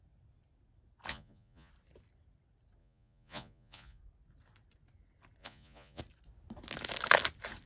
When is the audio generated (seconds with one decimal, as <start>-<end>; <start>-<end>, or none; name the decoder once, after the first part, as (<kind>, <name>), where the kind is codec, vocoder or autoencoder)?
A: 1.1-1.7 (vocoder, Vocos); 2.8-4.0; 5.4-6.0